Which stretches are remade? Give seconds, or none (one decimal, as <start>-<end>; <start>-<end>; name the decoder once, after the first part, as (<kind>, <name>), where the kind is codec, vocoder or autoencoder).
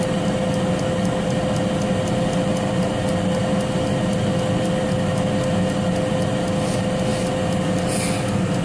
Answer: none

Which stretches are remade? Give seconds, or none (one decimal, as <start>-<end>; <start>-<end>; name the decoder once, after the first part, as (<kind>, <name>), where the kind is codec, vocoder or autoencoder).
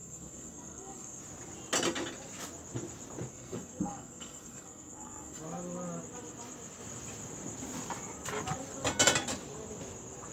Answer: 0.0-1.2 (codec, SNAC); 3.3-5.4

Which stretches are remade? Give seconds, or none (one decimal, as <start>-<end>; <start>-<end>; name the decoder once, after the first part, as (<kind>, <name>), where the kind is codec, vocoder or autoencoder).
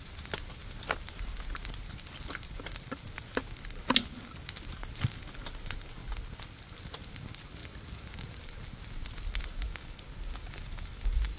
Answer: none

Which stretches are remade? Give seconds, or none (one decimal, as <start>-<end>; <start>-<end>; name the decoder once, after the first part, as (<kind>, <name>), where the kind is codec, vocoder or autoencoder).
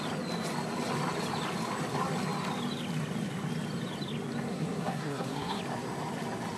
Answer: 4.5-5.6 (codec, SNAC)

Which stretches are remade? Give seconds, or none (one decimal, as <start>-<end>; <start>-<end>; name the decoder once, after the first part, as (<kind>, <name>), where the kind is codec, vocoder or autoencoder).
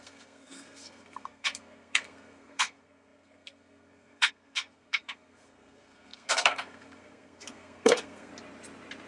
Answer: 0.0-8.3 (codec, SNAC)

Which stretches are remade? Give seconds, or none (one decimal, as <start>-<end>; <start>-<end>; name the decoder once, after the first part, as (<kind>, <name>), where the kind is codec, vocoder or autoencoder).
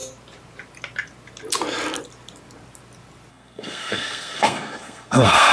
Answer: 3.3-5.5 (codec, SNAC)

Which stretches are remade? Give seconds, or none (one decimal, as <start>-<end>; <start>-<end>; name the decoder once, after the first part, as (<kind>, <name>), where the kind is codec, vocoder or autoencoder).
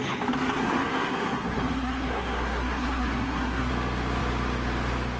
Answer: 0.6-3.7 (codec, SNAC)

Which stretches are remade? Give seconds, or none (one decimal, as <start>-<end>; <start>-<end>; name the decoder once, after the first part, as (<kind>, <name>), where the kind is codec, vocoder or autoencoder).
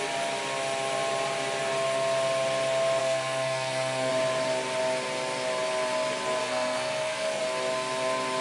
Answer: 3.0-4.1 (codec, SNAC); 6.4-7.4